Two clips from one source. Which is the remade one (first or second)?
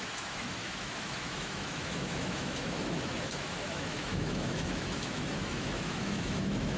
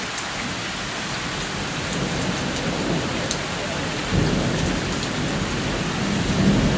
first